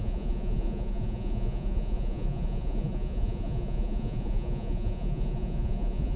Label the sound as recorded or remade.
remade